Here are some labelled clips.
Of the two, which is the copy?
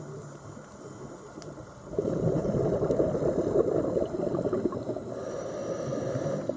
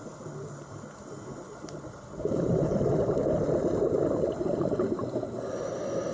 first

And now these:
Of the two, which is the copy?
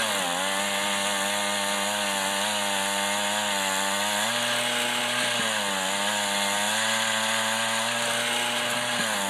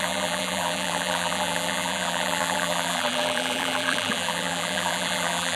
second